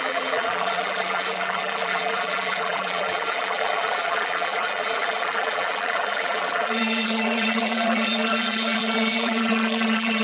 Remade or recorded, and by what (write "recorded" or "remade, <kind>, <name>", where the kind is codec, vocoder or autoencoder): remade, vocoder, BigVGAN v2